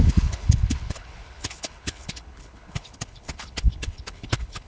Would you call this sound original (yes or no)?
no